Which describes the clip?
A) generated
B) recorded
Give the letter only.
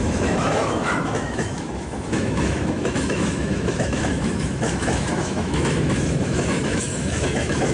A